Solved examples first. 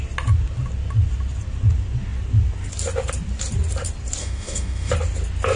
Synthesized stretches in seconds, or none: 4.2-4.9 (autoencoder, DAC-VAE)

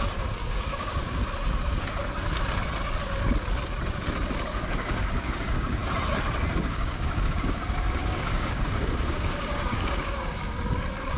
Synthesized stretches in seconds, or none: 0.0-1.2 (codec, DAC); 4.4-5.8; 6.5-10.4

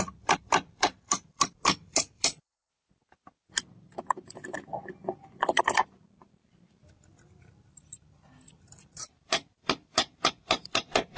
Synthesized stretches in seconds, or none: 0.0-2.7 (vocoder, BigVGAN v2); 5.6-11.2

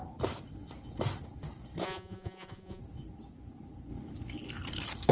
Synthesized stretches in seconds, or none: 1.8-2.8 (vocoder, Vocos)

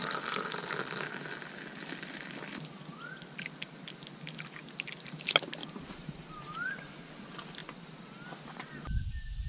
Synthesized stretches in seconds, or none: none

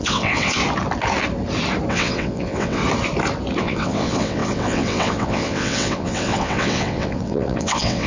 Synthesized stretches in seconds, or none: 0.0-0.6 (vocoder, WaveNeXt); 1.9-2.8; 3.6-8.1